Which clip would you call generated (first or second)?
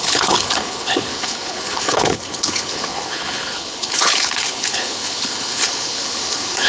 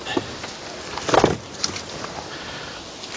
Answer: first